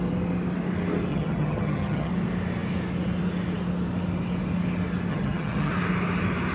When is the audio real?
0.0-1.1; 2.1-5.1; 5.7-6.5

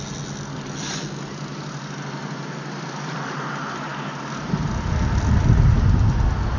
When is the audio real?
0.0-6.6

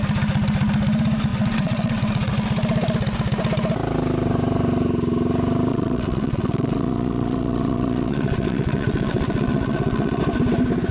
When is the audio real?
0.0-1.3; 2.3-5.7; 10.2-10.9

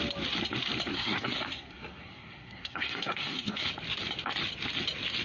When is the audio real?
0.0-0.9; 3.7-5.2

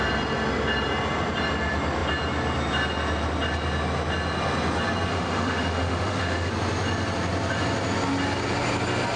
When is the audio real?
0.0-5.1; 6.5-9.2